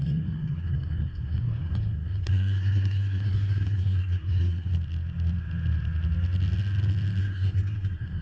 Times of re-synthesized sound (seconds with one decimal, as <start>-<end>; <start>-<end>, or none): 0.0-4.7; 7.2-8.2